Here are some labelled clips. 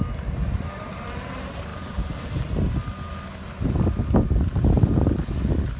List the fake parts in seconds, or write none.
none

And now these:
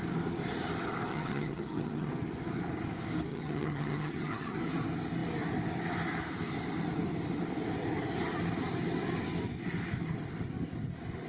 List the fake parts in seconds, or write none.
1.1-2.1 (vocoder, HiFi-GAN); 3.3-4.6

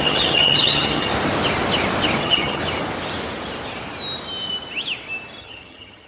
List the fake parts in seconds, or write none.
0.0-1.1 (vocoder, HiFi-GAN); 2.2-2.6; 5.4-6.1